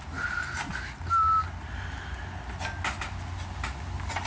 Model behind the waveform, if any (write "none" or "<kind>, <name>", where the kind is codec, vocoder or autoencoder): none